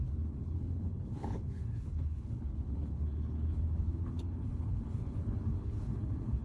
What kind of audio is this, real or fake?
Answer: fake